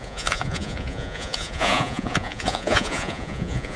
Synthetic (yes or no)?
yes